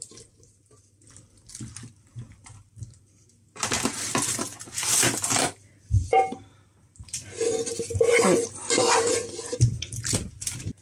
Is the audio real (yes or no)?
yes